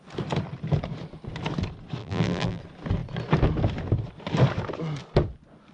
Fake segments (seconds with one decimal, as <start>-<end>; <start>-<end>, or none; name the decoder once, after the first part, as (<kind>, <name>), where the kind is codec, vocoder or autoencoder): 2.0-2.6 (vocoder, BigVGAN v2)